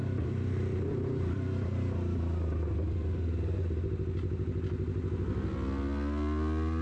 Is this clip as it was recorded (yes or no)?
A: yes